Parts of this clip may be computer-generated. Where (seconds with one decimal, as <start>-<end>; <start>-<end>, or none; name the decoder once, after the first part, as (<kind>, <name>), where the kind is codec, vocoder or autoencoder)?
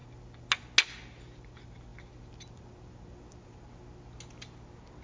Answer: none